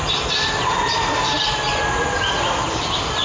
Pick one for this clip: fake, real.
real